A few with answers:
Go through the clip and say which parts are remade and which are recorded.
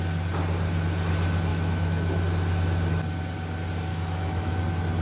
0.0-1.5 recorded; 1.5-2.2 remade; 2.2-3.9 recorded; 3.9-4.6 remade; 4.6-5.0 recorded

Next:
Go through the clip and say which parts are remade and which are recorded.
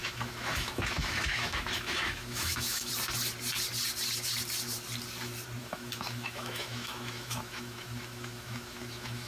0.0-2.9 remade; 2.9-5.6 recorded; 5.6-9.3 remade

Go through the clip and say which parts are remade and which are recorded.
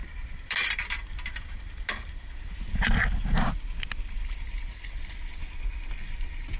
0.0-6.6 recorded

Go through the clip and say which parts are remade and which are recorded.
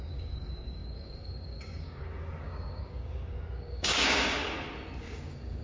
0.0-4.4 remade; 4.4-5.0 recorded; 5.0-5.6 remade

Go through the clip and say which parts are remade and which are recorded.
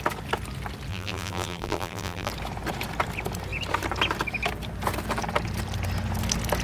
0.0-0.9 recorded; 0.9-2.3 remade; 2.3-6.6 recorded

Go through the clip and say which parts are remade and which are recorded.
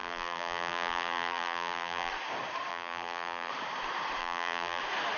0.0-2.1 remade; 2.1-2.7 recorded; 2.7-3.5 remade; 3.5-4.2 recorded; 4.2-4.8 remade; 4.8-5.2 recorded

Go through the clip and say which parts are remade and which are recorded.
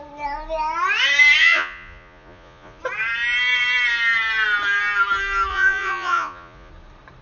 0.0-1.4 recorded; 1.4-2.8 remade; 2.8-5.5 recorded; 5.5-6.7 remade; 6.7-7.2 recorded